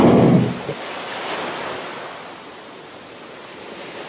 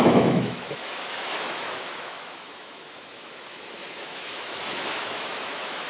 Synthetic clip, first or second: second